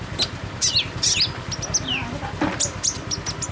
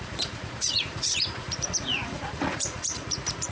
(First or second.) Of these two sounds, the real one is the first